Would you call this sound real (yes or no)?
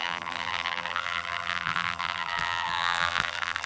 no